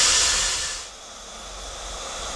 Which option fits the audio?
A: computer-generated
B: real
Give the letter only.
B